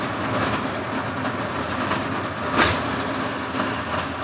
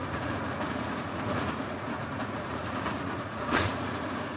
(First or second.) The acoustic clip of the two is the first